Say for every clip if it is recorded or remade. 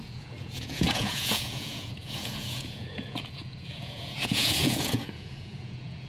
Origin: remade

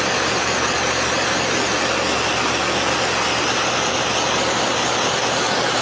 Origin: recorded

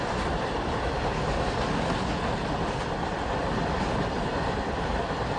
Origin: recorded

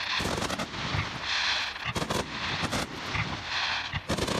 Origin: recorded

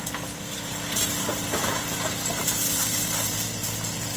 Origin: recorded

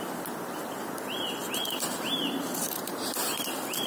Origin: remade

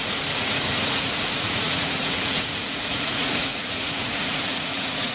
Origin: remade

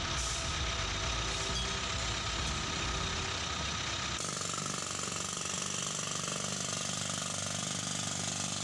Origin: recorded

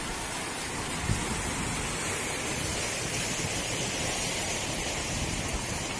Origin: recorded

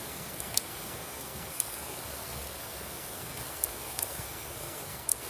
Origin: remade